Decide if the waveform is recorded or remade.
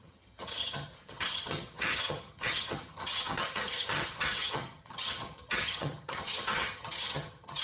remade